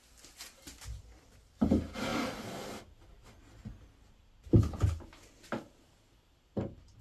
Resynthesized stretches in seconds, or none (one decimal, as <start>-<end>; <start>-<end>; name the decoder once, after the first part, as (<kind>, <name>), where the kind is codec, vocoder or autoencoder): none